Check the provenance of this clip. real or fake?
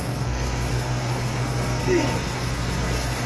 fake